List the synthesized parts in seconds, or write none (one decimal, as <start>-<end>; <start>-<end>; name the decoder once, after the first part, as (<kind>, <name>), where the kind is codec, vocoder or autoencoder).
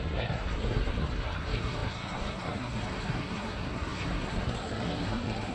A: 0.0-5.5 (codec, SNAC)